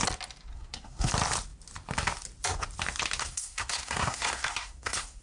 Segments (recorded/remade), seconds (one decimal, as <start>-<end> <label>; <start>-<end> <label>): 0.0-0.5 recorded; 0.5-1.1 remade; 1.1-3.2 recorded; 3.2-5.2 remade